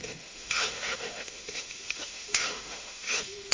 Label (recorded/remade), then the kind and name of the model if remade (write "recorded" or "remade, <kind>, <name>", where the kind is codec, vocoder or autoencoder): remade, autoencoder, DAC-VAE